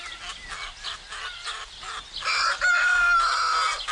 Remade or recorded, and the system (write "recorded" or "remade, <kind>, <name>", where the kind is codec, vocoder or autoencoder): recorded